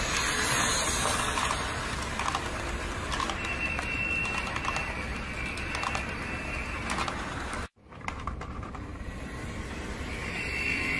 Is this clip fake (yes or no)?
yes